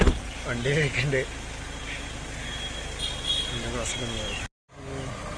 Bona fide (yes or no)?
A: yes